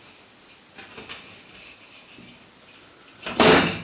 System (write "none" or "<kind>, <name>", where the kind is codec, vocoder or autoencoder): none